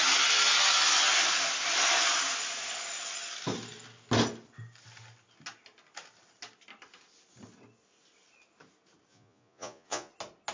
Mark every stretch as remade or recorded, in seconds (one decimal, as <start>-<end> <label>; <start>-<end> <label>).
0.0-9.1 recorded; 9.1-10.1 remade; 10.1-10.5 recorded

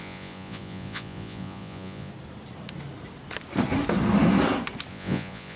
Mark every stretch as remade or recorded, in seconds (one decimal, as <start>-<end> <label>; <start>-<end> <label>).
0.0-2.1 remade; 2.1-4.9 recorded; 4.9-5.6 remade